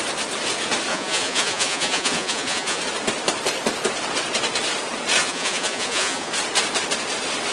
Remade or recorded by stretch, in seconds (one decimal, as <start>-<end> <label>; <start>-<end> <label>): 0.0-0.9 recorded; 0.9-2.8 remade; 2.8-5.2 recorded; 5.2-6.3 remade; 6.3-7.5 recorded